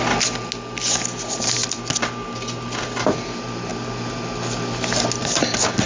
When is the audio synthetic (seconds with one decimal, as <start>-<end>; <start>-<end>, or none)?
none